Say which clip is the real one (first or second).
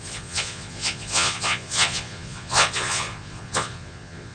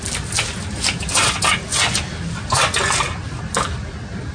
second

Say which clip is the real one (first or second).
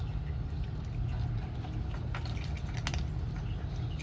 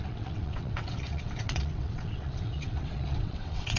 first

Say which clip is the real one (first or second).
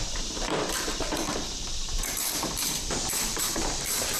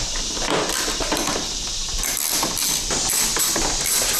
second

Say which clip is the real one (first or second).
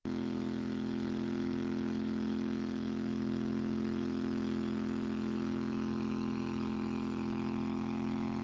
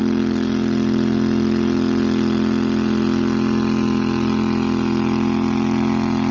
second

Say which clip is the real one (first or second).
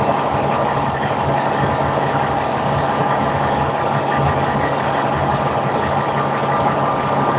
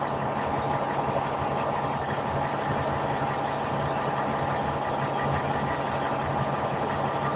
second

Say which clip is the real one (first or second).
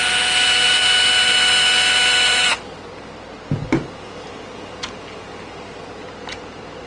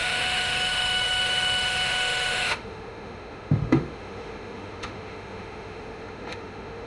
first